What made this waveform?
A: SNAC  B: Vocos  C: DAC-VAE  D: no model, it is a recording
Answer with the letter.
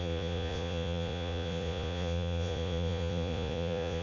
B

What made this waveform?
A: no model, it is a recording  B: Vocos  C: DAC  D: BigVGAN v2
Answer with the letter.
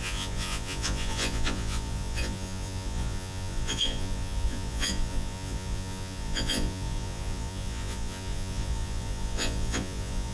B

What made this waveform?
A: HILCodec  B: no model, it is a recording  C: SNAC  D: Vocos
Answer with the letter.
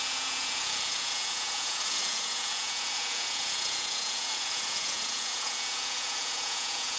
D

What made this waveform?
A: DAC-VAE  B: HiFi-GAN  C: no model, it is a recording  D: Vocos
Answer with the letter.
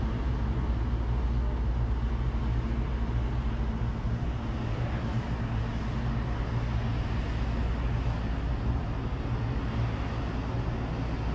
C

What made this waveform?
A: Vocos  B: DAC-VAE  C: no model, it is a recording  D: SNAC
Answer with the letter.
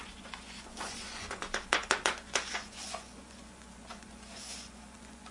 A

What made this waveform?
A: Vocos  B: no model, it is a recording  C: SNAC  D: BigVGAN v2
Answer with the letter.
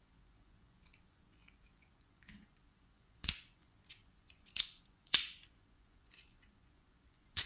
A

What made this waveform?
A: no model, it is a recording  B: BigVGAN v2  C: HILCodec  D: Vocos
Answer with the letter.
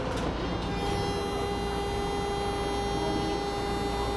A